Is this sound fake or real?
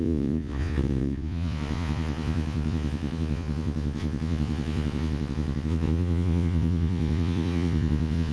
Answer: fake